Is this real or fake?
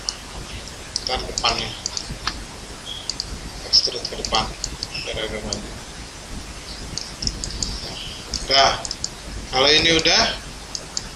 real